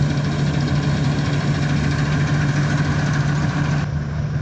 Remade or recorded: recorded